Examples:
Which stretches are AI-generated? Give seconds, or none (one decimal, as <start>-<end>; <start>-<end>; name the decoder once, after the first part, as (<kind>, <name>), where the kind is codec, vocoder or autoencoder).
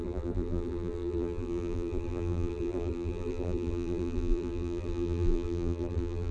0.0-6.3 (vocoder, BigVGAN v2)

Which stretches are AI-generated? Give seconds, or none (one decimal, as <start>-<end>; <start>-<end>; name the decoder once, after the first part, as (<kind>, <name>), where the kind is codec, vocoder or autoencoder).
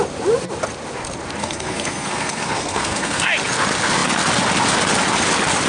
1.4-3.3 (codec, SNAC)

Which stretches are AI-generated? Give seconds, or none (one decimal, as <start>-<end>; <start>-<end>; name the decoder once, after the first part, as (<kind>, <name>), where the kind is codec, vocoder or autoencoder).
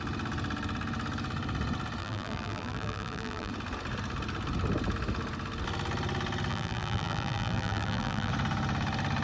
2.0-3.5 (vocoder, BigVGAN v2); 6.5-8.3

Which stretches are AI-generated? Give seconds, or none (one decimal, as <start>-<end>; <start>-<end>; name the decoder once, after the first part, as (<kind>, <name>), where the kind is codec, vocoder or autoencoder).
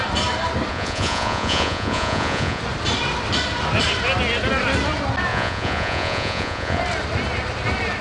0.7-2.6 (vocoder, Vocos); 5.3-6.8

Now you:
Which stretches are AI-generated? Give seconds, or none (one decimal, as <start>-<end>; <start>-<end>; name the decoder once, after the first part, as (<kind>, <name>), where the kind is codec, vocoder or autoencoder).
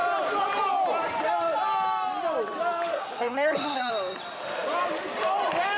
2.9-3.9 (codec, SNAC)